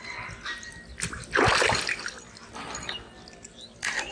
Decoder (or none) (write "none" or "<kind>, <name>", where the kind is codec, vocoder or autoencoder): none